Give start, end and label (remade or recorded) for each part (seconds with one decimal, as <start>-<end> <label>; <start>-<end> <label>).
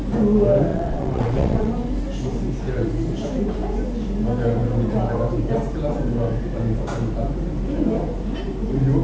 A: 0.0-0.7 recorded; 0.7-1.7 remade; 1.7-9.0 recorded